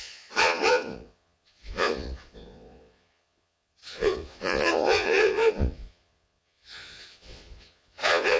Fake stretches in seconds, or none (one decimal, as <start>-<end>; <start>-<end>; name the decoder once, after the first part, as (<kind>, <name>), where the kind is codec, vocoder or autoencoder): 0.0-8.4 (vocoder, Vocos)